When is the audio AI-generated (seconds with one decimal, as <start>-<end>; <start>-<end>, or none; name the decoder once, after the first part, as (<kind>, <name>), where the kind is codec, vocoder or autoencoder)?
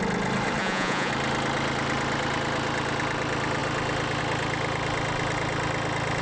0.6-1.1 (vocoder, Vocos)